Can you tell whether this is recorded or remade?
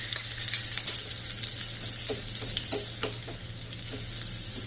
recorded